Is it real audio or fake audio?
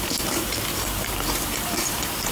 fake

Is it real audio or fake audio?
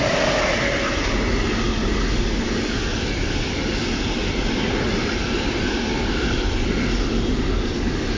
real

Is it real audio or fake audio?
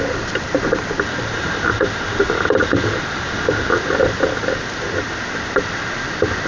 real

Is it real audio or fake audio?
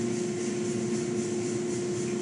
real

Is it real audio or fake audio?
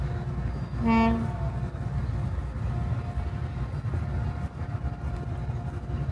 real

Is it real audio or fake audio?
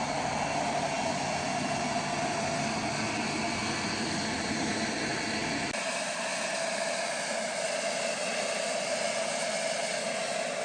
real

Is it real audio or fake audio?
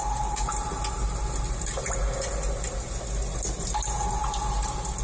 real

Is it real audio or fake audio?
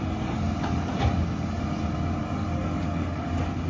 real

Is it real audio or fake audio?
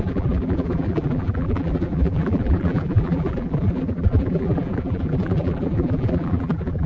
fake